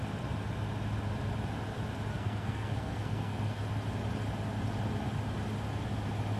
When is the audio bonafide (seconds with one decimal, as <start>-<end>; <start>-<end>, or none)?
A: 0.0-2.1; 3.6-6.4